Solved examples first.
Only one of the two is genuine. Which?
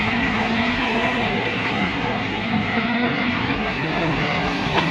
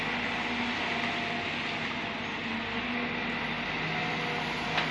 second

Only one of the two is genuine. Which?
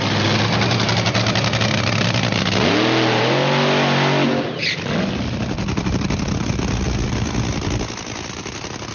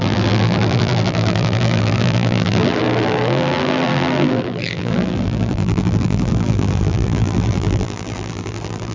first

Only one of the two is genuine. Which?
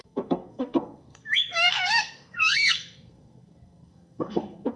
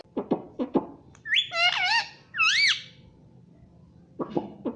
second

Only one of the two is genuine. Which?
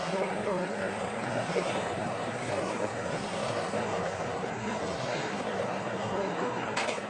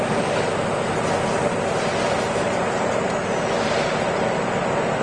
second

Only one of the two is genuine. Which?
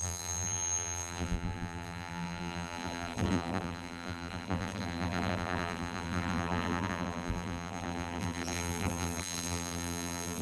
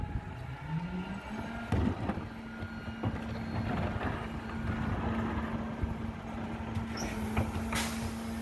second